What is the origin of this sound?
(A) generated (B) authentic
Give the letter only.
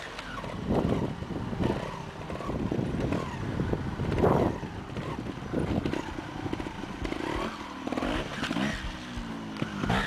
B